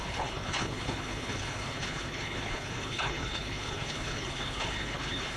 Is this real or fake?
fake